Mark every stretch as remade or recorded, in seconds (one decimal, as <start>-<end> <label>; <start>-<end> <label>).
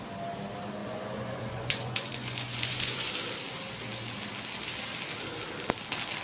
0.0-0.8 recorded; 0.8-3.1 remade; 3.1-6.2 recorded